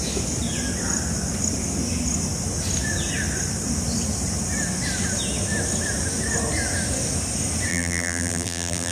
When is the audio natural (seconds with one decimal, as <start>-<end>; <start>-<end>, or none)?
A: 0.0-7.7